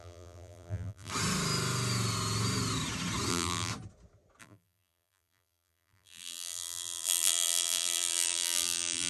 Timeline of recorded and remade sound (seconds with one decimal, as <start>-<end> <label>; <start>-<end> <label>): 0.0-1.1 remade; 1.1-3.3 recorded; 3.3-3.7 remade; 3.7-4.4 recorded; 4.4-9.1 remade